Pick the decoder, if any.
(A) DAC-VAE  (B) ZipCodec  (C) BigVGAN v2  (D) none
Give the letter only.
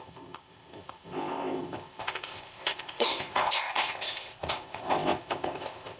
B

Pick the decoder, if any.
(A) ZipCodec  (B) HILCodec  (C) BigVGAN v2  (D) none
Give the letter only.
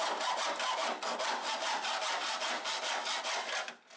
D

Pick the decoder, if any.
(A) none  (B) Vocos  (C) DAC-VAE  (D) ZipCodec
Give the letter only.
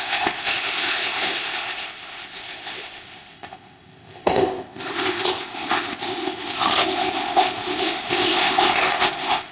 D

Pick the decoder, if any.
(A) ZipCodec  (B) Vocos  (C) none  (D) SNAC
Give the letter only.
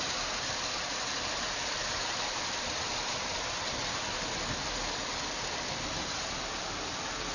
C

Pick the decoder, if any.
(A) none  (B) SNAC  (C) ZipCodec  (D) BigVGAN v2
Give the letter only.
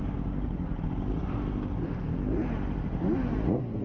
A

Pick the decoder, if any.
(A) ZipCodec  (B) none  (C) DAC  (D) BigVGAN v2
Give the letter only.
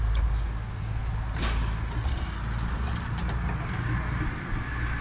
B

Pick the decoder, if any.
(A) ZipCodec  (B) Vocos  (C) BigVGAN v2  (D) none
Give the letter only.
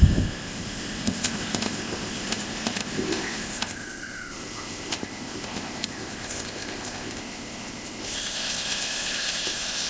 A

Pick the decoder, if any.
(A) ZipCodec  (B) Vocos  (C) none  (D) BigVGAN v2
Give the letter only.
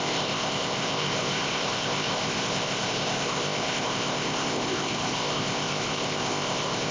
A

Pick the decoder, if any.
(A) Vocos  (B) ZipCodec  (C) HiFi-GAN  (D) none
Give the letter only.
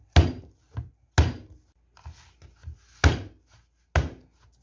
D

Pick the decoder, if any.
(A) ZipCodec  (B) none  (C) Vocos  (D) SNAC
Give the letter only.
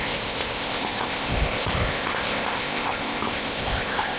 A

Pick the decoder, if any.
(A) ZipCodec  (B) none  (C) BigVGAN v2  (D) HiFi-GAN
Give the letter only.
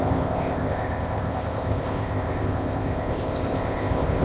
A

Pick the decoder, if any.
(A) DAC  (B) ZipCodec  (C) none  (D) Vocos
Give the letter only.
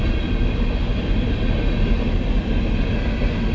C